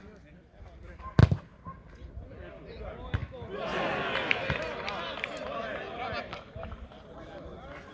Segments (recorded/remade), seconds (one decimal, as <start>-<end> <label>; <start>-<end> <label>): 0.0-7.9 recorded